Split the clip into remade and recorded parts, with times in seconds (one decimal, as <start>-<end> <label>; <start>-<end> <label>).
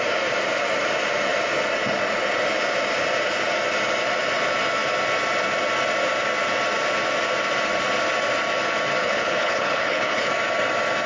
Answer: 0.0-9.0 recorded; 9.0-10.3 remade; 10.3-11.1 recorded